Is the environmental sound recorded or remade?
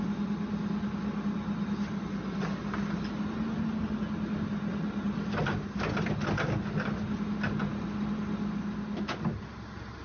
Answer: recorded